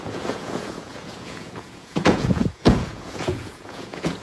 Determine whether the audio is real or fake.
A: fake